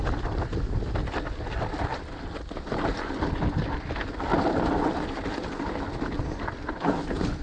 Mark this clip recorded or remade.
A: recorded